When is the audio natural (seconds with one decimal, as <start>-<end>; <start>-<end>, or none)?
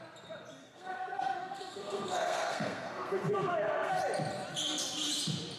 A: 0.0-0.6; 4.0-5.6